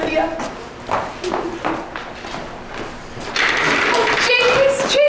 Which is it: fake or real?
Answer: real